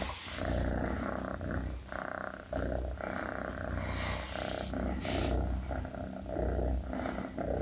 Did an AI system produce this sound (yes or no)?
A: no